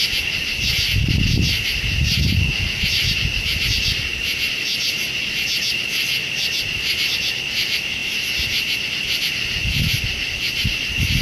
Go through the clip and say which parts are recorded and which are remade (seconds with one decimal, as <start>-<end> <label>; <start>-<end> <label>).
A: 0.0-4.1 remade; 4.1-6.9 recorded; 6.9-8.0 remade; 8.0-9.2 recorded; 9.2-11.2 remade